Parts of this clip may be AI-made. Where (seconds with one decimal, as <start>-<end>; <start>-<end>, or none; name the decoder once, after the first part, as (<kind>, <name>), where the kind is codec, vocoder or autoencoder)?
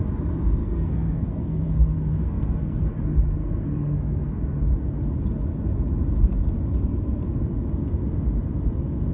0.6-2.9 (codec, SNAC); 3.4-4.4